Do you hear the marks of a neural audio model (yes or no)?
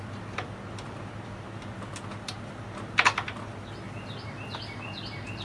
no